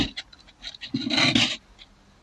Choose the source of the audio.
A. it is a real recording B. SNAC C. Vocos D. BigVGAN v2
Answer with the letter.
A